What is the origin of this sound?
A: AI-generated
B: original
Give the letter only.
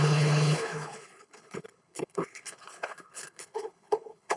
A